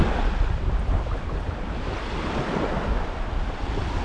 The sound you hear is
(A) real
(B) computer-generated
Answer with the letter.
A